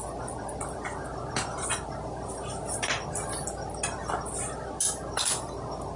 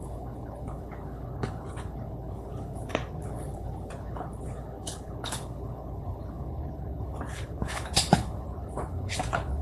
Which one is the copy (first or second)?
second